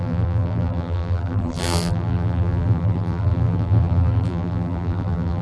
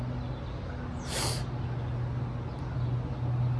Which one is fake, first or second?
first